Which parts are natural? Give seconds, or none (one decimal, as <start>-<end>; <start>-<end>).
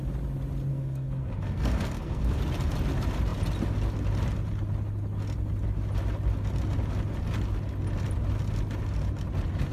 0.0-0.7; 2.4-9.7